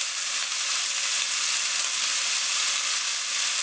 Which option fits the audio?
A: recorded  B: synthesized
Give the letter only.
A